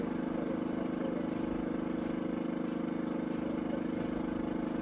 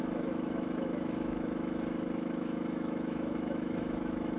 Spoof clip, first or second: second